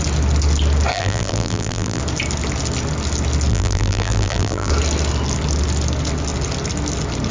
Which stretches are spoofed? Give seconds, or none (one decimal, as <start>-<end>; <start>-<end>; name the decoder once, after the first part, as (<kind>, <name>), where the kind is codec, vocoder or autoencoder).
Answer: 0.9-2.0 (vocoder, BigVGAN v2); 3.5-4.7